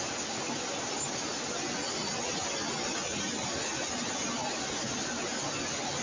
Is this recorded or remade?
recorded